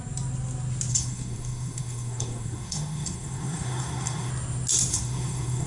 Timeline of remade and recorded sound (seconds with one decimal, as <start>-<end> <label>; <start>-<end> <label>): 0.0-0.9 recorded; 0.9-4.3 remade; 4.3-4.9 recorded; 4.9-5.7 remade